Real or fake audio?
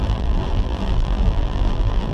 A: fake